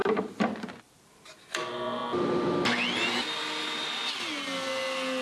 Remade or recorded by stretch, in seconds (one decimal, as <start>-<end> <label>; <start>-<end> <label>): 0.0-0.7 remade; 0.7-5.2 recorded